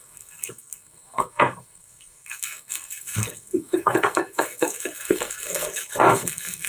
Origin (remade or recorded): remade